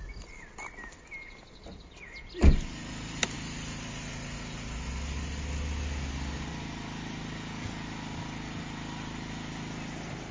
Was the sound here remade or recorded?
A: recorded